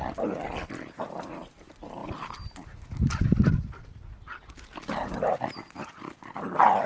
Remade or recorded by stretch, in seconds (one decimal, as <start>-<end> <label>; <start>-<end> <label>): 0.0-6.9 recorded